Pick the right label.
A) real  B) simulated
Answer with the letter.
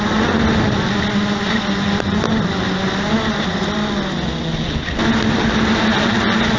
A